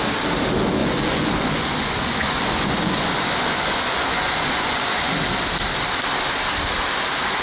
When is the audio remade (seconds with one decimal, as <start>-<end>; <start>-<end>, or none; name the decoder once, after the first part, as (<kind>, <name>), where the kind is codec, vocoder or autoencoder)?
0.8-5.1 (vocoder, Vocos)